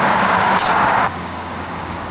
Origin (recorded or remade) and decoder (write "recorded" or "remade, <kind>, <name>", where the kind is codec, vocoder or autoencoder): remade, codec, DAC